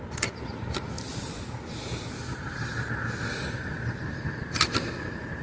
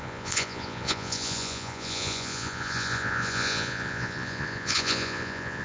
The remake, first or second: second